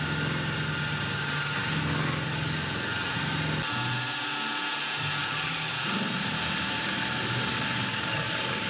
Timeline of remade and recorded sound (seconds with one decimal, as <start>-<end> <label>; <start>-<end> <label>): 0.0-1.6 recorded; 1.6-2.9 remade; 2.9-5.2 recorded; 5.2-5.7 remade; 5.7-7.9 recorded; 7.9-8.7 remade